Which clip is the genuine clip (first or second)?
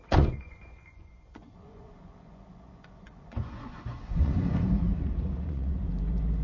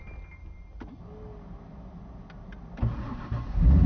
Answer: second